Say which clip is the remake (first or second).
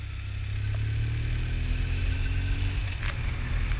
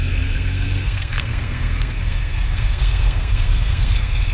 second